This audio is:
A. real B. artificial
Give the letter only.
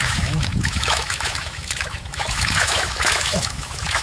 B